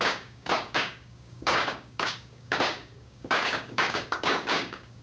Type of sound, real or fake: fake